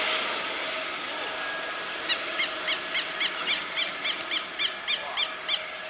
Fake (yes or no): no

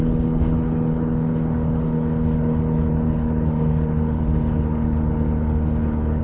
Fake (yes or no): yes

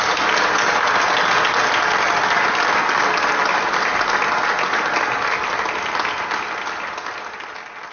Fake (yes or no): no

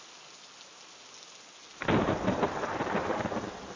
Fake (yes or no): no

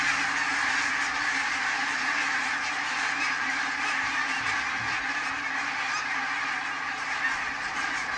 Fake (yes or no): no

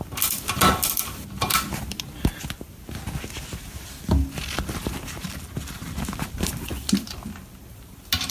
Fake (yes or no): no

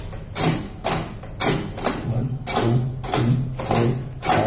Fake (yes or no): no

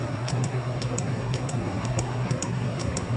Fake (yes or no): yes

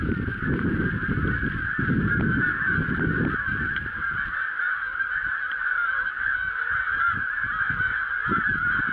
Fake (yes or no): no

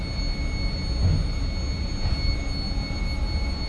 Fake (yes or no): no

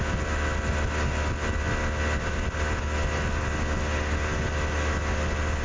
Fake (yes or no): no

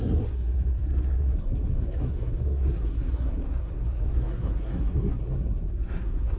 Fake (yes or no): yes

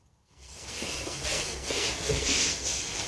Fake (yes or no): yes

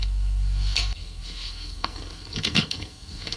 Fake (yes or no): yes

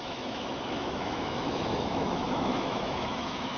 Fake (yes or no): yes